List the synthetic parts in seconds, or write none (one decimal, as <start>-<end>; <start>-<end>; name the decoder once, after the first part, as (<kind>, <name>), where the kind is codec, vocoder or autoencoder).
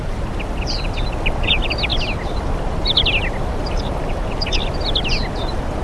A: 1.9-5.8 (vocoder, BigVGAN v2)